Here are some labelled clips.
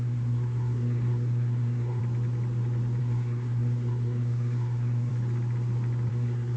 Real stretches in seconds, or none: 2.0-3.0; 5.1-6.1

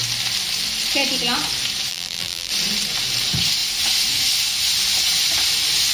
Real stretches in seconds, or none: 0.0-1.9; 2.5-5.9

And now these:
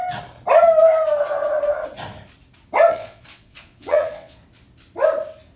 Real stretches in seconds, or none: 0.0-2.9; 4.4-5.6

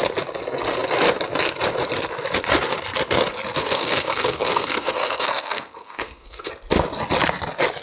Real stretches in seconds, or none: 0.0-3.6; 6.5-7.8

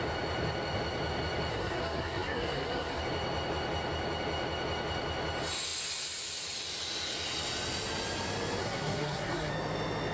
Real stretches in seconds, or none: 0.0-1.5; 3.0-8.6; 9.5-10.1

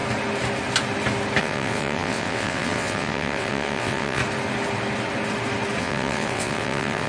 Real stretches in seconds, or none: 0.0-1.4; 4.2-5.8

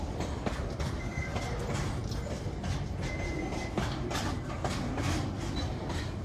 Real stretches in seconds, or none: 0.0-6.2

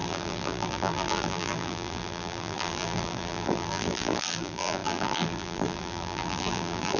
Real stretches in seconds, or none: none